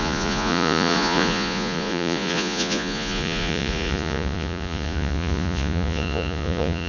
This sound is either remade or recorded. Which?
remade